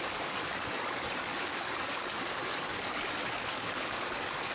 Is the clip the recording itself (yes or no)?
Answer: no